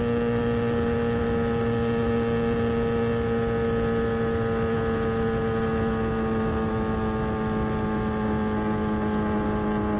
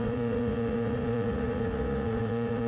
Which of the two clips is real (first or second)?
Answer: first